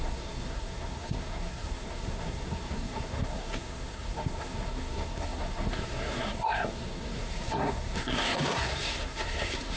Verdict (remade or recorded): remade